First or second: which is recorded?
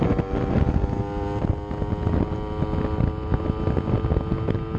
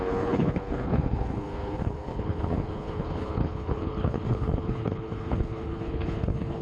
first